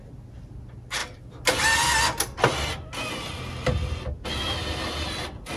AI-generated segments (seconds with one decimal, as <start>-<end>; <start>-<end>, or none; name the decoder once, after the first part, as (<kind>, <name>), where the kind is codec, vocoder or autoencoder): none